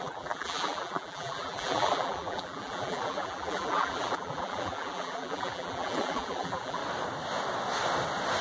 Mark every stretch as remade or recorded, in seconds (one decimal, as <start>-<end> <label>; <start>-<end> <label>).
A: 0.0-6.8 remade; 6.8-8.4 recorded